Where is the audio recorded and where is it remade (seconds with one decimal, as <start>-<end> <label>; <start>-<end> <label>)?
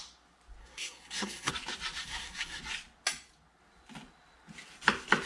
0.0-0.6 recorded; 0.6-1.5 remade; 1.5-2.0 recorded; 2.0-2.6 remade; 2.6-5.3 recorded